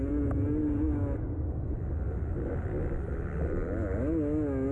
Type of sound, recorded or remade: recorded